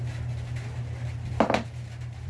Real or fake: real